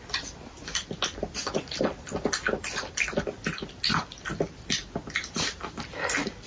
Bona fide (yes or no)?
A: yes